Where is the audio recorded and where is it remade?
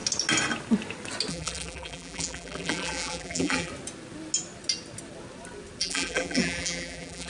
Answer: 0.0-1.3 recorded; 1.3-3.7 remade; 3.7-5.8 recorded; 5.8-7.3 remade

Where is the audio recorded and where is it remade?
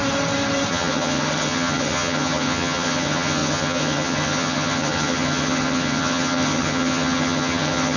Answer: 0.0-0.7 recorded; 0.7-8.0 remade